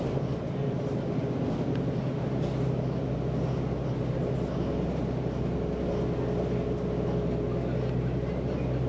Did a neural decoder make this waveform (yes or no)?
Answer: no